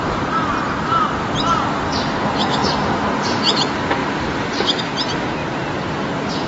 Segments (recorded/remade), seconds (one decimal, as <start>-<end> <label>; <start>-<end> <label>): 0.0-6.5 recorded